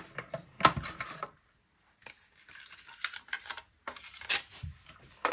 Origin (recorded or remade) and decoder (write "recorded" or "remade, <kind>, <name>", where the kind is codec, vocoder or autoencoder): recorded